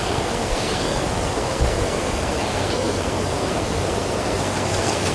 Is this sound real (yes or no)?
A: no